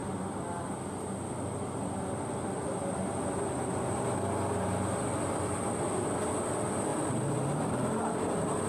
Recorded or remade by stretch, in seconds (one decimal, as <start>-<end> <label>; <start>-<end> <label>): 0.0-8.7 recorded